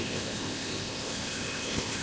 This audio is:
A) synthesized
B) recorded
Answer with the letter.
A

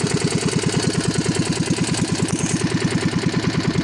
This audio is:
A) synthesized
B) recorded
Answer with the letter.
B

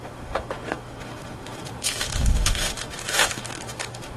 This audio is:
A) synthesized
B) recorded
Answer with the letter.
A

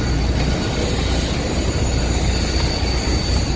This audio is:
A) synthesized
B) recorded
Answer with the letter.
B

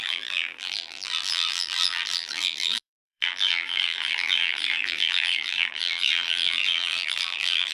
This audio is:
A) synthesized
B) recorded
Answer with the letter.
A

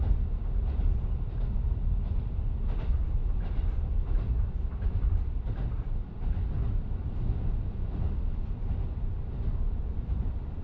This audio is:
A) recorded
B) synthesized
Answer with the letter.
A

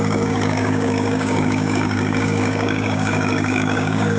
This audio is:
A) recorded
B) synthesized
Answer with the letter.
B